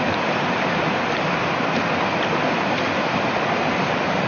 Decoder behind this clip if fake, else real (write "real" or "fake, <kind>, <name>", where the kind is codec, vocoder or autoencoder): real